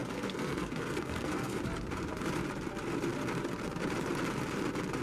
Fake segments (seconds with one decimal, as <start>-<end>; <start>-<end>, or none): 0.0-1.6